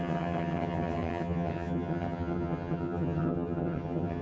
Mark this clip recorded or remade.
remade